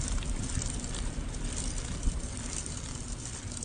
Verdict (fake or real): real